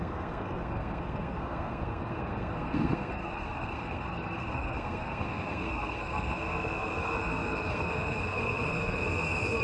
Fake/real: fake